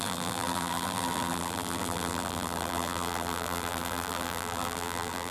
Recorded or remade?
remade